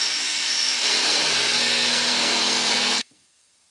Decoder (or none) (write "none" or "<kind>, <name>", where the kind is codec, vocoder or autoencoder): codec, SNAC